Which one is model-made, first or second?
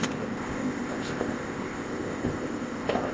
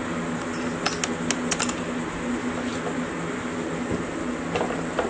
first